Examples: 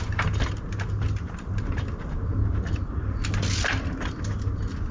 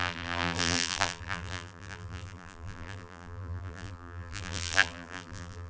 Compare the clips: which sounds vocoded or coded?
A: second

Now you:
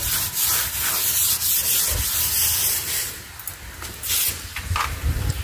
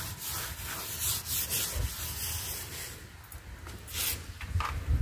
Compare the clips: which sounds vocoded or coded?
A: first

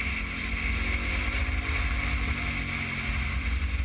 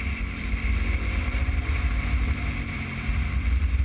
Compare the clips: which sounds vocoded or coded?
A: second